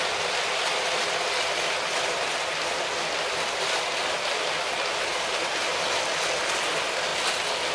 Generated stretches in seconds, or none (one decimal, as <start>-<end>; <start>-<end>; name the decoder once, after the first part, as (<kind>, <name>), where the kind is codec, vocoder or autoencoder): none